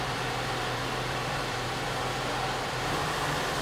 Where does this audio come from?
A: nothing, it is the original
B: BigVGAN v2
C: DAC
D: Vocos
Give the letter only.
B